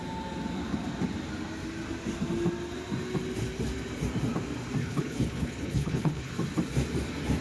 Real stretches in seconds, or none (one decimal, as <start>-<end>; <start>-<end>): 0.0-4.8; 6.3-7.4